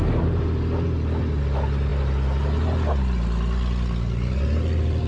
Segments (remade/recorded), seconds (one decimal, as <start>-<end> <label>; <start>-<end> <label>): 0.0-5.1 recorded